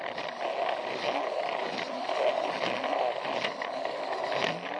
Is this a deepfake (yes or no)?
no